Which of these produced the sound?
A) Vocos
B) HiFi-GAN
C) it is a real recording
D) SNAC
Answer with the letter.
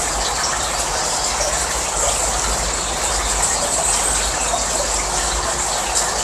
C